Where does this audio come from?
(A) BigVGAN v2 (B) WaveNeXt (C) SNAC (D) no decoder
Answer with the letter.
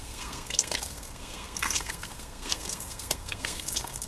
C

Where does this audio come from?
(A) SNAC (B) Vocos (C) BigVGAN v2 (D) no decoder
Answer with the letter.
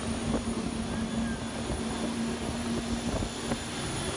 D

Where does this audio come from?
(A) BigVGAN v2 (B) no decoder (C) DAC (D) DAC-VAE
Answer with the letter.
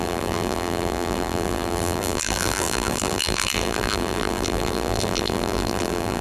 A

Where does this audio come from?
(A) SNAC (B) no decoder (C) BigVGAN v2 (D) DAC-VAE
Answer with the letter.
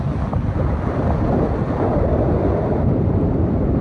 B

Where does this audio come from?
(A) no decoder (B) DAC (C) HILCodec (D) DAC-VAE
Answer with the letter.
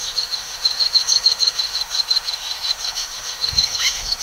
D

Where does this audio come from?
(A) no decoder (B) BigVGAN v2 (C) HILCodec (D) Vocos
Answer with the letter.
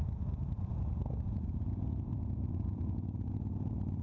D